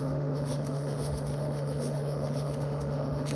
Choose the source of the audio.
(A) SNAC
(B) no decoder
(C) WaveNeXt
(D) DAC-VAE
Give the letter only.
D